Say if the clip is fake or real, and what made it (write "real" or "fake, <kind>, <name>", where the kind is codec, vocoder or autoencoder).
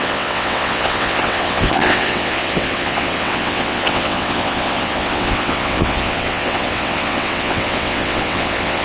fake, vocoder, WaveNeXt